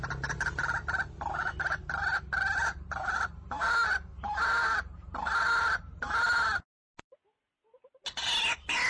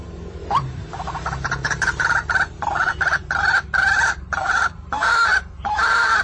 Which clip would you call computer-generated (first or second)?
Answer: second